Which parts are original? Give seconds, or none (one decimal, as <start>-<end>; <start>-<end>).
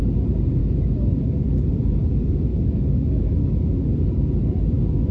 0.0-0.6; 1.3-2.5; 3.9-5.1